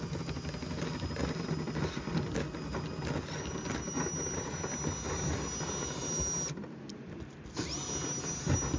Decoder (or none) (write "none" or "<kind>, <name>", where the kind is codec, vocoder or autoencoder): none